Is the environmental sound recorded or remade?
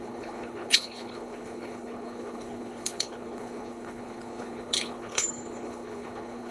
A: remade